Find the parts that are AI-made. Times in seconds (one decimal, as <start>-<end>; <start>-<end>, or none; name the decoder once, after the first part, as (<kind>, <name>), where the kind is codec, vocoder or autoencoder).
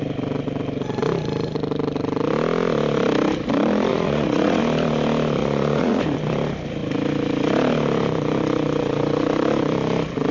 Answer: 3.9-4.6 (vocoder, Vocos); 5.4-6.0